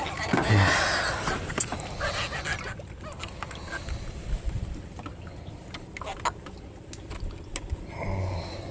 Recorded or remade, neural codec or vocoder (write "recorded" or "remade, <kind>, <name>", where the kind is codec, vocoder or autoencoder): recorded